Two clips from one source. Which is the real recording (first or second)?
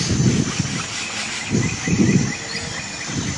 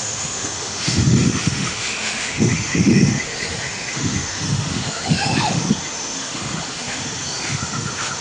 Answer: first